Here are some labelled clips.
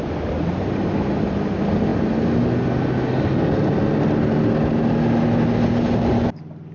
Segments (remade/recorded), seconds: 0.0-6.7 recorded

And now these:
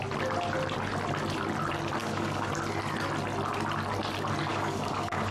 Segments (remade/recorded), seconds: 0.0-2.0 recorded; 2.0-2.5 remade; 2.5-4.5 recorded; 4.5-5.3 remade

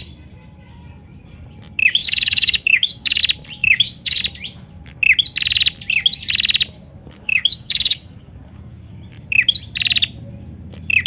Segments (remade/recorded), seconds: 0.0-2.0 recorded; 2.0-3.2 remade; 3.2-3.6 recorded; 3.6-4.2 remade; 4.2-7.0 recorded; 7.0-8.9 remade; 8.9-11.1 recorded